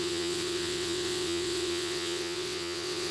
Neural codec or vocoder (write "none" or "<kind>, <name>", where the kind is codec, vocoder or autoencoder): vocoder, WaveNeXt